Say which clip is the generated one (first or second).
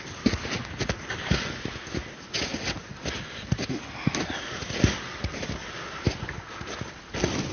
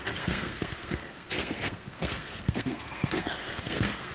second